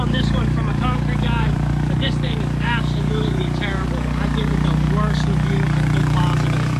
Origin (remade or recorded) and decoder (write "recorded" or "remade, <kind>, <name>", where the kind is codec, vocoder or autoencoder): remade, codec, DAC